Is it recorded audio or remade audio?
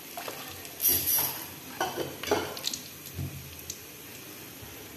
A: recorded